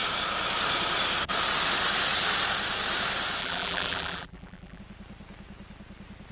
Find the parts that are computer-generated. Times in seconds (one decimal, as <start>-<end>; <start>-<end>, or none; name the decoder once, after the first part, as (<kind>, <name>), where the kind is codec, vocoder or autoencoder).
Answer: 3.4-4.8 (vocoder, BigVGAN v2)